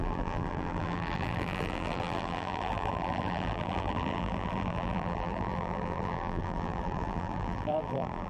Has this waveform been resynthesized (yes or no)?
yes